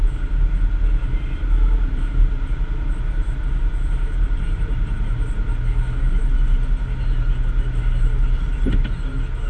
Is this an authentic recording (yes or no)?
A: yes